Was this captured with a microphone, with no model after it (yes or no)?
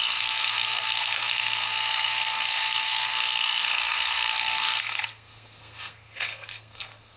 no